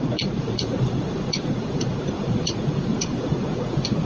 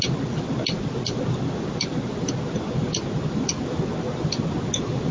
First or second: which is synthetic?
first